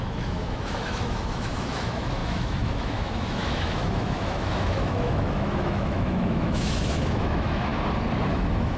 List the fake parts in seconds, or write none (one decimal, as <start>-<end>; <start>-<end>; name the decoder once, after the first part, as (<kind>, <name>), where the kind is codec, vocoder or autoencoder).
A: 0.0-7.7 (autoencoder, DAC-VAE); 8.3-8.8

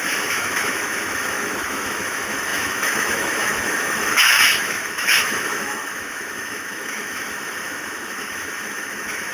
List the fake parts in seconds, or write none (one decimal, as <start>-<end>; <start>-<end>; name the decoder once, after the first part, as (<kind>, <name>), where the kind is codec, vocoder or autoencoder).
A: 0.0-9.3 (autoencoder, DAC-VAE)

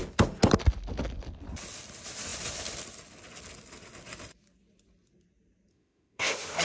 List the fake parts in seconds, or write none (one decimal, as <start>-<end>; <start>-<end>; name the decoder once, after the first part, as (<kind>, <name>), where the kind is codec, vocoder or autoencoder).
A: 5.7-6.6 (autoencoder, DAC-VAE)

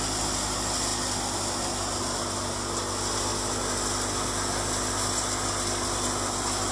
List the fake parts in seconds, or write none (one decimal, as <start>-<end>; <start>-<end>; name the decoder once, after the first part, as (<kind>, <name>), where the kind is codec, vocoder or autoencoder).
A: none